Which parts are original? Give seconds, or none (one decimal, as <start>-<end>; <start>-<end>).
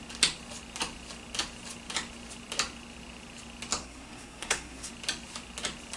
0.0-3.8; 4.9-6.0